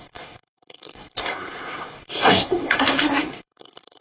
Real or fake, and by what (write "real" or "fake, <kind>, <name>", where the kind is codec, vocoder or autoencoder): fake, codec, SNAC